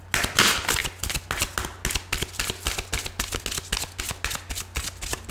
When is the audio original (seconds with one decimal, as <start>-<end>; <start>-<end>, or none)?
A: 0.0-5.3